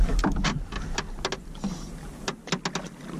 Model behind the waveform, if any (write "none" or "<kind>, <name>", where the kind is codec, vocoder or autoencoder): none